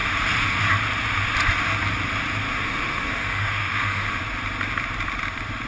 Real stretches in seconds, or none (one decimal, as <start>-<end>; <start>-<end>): 0.0-2.5; 4.2-5.7